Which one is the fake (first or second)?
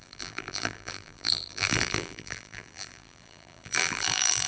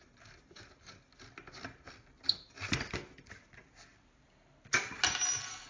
first